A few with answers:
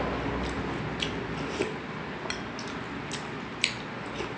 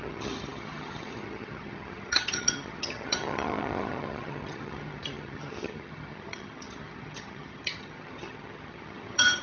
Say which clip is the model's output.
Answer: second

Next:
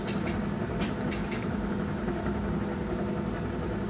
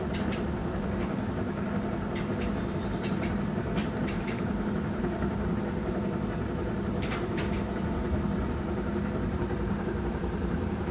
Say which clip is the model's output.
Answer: second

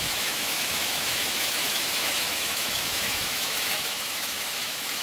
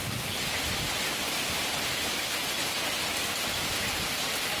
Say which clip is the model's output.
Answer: first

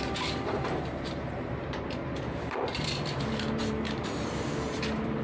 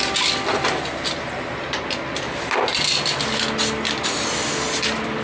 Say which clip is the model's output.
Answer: first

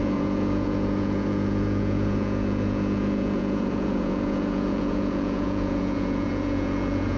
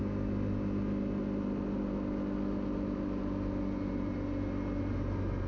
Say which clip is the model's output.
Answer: first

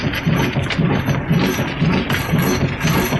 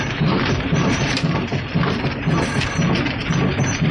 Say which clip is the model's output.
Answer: second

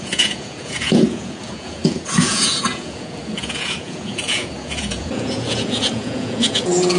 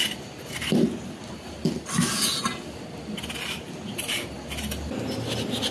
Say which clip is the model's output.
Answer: first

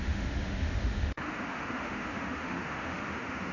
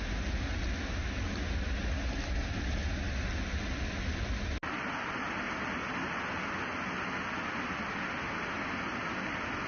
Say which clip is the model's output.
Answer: first